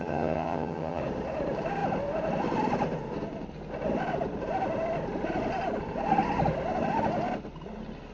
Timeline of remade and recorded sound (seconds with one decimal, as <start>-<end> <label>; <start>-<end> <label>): 0.0-1.0 remade; 1.0-8.1 recorded